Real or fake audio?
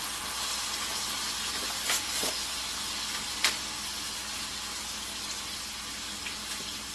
real